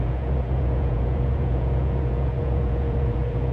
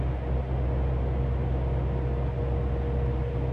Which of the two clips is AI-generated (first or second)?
first